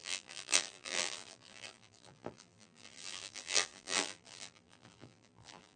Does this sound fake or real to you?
fake